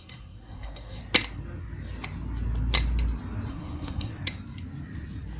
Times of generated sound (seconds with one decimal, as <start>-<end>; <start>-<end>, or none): 0.0-1.0; 3.5-4.1